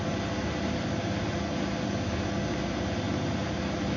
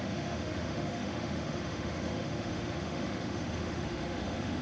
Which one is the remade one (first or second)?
second